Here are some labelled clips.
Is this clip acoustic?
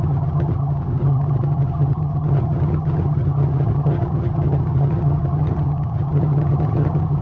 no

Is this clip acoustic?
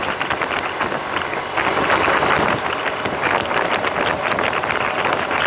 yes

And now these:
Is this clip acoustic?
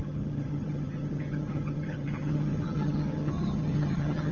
no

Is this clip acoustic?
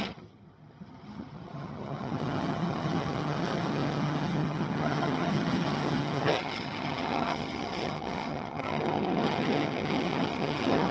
no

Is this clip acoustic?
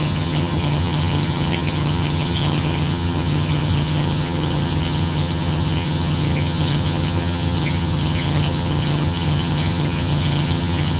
no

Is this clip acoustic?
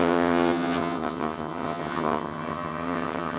no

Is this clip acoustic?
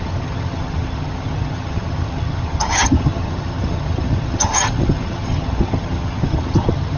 no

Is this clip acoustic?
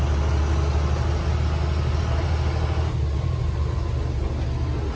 yes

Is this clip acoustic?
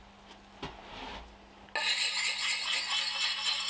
yes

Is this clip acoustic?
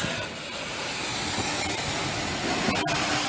yes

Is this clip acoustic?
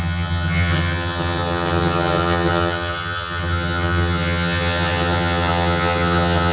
no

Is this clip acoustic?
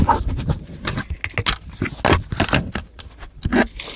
yes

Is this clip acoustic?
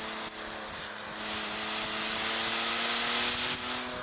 yes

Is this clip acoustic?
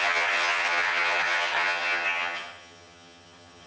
no